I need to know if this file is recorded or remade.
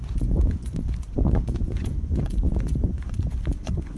remade